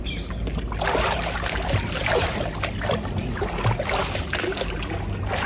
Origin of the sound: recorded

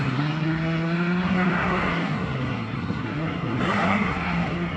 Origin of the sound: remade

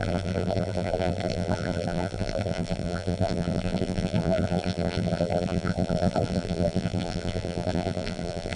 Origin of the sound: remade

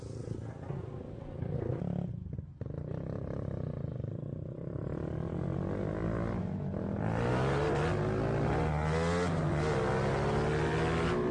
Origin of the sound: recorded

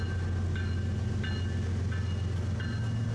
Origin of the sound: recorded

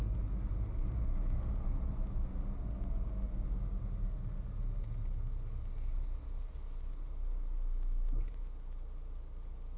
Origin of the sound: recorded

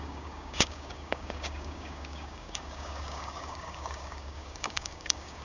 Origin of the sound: remade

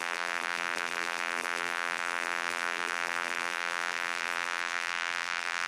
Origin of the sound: remade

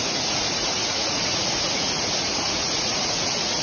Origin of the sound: remade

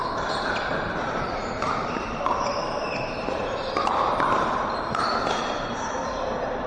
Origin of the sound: remade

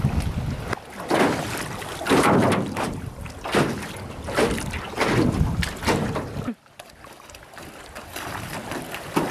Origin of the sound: recorded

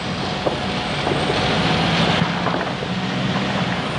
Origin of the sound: recorded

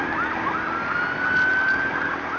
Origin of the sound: recorded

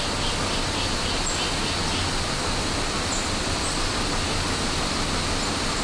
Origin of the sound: recorded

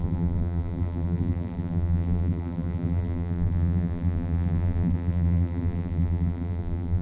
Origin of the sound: remade